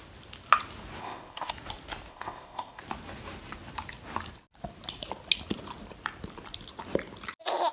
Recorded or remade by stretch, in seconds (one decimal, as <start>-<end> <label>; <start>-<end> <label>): 0.0-1.0 recorded; 1.0-1.5 remade; 1.5-2.1 recorded; 2.1-2.8 remade; 2.8-7.7 recorded